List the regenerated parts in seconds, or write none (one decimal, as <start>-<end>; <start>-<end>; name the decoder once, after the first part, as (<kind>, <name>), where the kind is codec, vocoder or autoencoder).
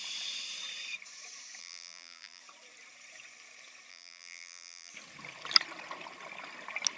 1.6-2.4 (vocoder, BigVGAN v2); 3.9-4.9